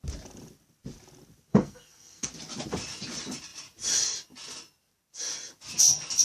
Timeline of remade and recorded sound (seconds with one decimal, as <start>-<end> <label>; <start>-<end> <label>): 0.0-1.5 recorded; 1.5-2.3 remade; 2.3-6.2 recorded